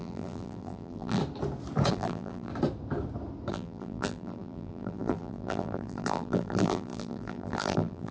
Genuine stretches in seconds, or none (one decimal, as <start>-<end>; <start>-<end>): 1.2-1.9; 2.5-3.5